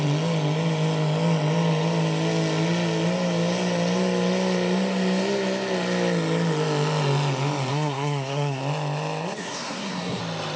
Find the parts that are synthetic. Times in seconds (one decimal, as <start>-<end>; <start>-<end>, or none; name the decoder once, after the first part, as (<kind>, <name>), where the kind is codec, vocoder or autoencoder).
7.7-8.6 (codec, SNAC); 9.4-10.2